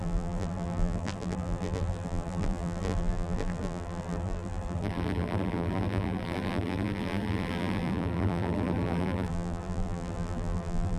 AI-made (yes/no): yes